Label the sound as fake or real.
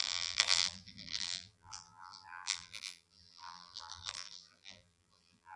fake